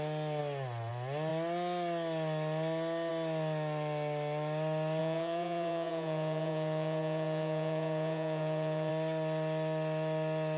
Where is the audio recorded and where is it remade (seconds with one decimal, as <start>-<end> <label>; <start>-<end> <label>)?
0.0-5.0 recorded; 5.0-8.9 remade; 8.9-10.6 recorded